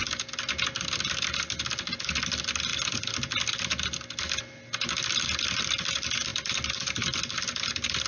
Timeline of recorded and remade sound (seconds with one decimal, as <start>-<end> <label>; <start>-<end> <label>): 0.0-8.1 recorded